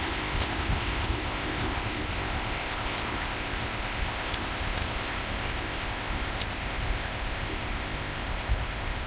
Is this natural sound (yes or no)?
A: no